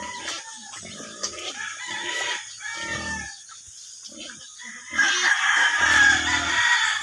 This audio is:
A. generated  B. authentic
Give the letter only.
B